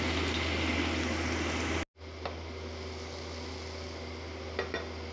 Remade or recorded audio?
recorded